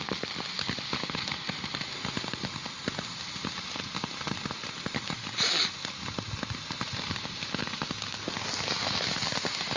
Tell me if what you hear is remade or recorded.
recorded